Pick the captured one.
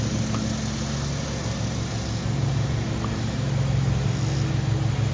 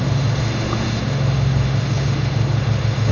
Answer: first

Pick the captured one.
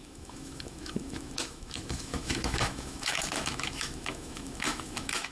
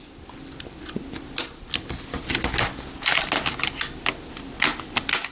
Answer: second